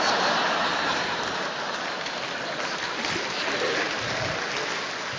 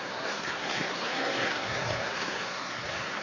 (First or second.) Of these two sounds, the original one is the first